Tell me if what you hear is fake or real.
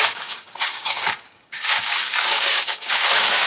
fake